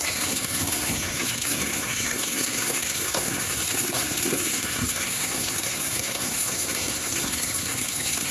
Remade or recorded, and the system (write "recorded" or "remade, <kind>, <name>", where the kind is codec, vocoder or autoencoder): remade, codec, SNAC